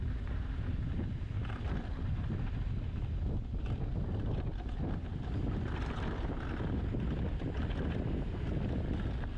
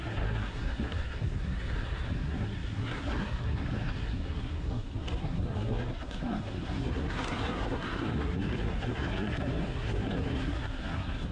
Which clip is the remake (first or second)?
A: second